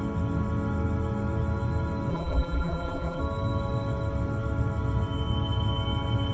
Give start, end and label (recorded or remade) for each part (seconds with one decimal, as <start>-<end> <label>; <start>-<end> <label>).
0.0-2.1 recorded; 2.1-3.2 remade; 3.2-6.3 recorded